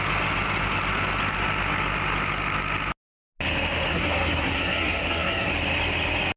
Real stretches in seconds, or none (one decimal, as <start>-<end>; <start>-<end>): 0.0-3.9; 5.5-6.4